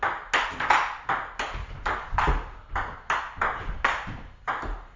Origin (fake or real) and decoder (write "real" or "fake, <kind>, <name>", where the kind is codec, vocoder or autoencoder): real